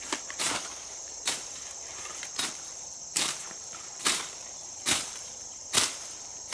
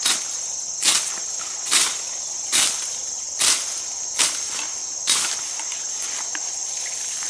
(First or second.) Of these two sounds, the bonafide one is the second